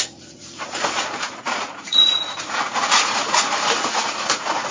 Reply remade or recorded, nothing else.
remade